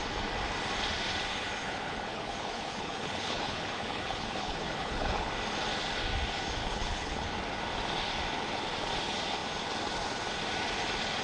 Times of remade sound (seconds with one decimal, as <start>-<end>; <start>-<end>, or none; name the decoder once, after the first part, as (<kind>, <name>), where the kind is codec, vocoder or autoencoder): 1.6-5.3 (codec, HILCodec); 6.6-7.3